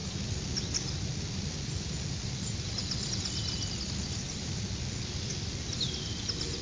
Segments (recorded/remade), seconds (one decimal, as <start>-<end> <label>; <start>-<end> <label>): 0.0-6.6 recorded